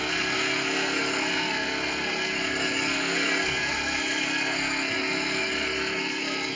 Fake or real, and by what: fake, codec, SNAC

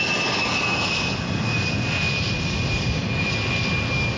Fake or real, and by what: real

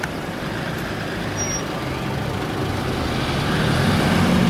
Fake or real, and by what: real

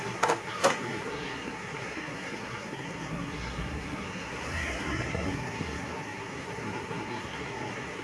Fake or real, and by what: fake, codec, SNAC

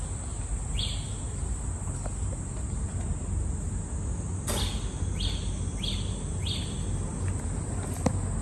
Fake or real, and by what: real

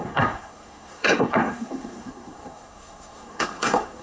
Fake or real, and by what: fake, codec, SNAC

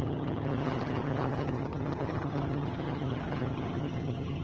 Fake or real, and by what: fake, vocoder, HiFi-GAN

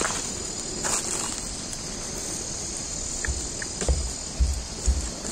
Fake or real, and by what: real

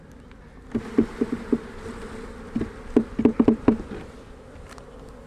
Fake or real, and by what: real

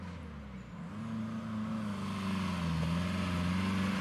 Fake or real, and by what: real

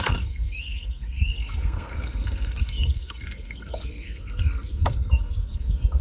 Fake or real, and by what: fake, codec, SNAC